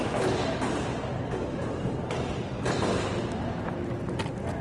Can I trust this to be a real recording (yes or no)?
yes